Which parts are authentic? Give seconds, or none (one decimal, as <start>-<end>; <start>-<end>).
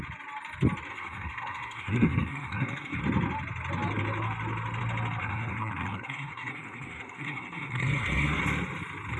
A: 0.0-0.9; 3.0-5.2; 8.4-9.2